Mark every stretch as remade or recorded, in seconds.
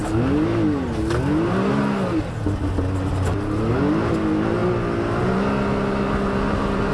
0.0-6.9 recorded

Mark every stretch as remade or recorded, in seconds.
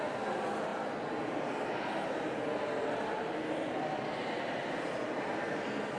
0.0-6.0 recorded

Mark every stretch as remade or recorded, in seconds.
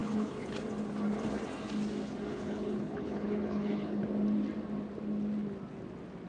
0.0-0.6 remade; 0.6-2.3 recorded; 2.3-4.0 remade; 4.0-6.3 recorded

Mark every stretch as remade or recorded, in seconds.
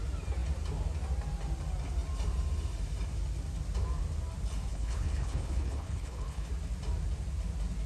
0.0-4.7 recorded; 4.7-6.5 remade; 6.5-7.9 recorded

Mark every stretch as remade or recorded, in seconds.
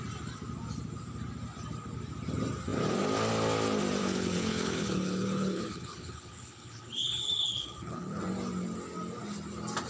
0.0-4.0 recorded; 4.0-8.2 remade; 8.2-9.9 recorded